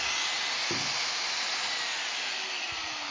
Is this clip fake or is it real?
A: real